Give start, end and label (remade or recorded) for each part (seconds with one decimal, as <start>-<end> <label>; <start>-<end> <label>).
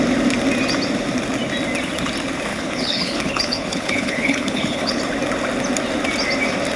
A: 0.0-2.5 recorded; 2.5-5.0 remade; 5.0-6.8 recorded